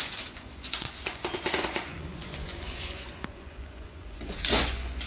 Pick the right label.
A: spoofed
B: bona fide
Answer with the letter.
A